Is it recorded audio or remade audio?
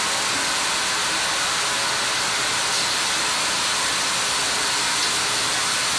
recorded